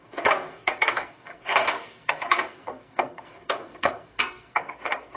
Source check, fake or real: fake